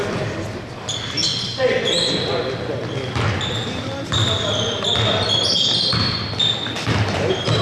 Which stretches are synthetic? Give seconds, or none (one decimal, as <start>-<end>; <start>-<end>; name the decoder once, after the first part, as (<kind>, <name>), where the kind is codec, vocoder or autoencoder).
none